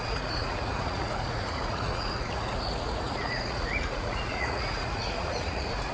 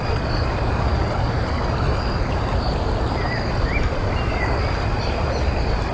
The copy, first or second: first